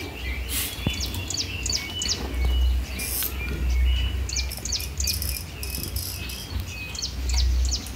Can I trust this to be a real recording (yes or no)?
yes